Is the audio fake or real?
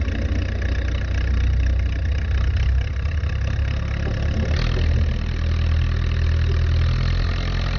real